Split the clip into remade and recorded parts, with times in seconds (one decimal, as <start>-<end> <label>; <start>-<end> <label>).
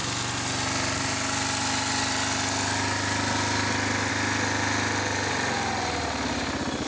0.0-6.9 recorded